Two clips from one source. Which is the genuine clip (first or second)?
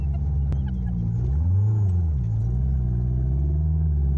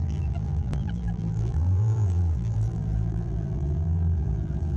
first